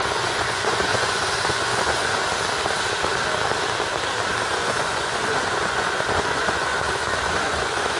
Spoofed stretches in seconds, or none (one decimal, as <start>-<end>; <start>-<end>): 0.0-2.2; 4.5-8.0